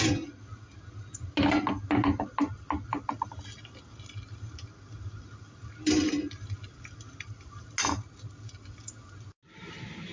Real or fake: real